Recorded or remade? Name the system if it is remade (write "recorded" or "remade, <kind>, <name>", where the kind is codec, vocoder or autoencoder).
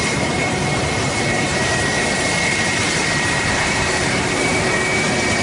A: remade, vocoder, BigVGAN v2